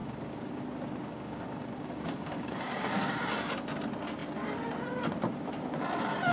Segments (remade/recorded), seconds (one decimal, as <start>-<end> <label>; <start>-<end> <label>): 0.0-0.6 remade; 0.6-1.0 recorded; 1.0-3.1 remade; 3.1-6.3 recorded